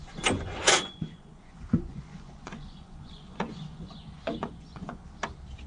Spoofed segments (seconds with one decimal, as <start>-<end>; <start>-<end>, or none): 0.0-5.0